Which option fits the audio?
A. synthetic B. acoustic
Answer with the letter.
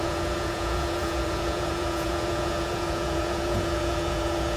A